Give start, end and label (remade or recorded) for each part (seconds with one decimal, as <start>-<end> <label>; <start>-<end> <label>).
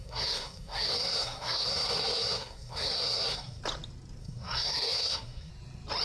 0.0-3.6 remade; 3.6-4.2 recorded; 4.2-5.5 remade; 5.5-6.0 recorded